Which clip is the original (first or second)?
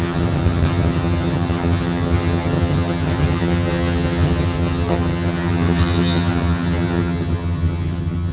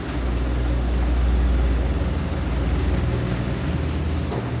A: second